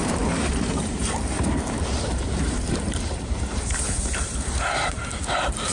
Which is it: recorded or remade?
remade